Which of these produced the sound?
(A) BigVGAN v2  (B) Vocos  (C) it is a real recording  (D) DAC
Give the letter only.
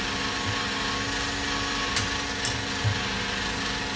C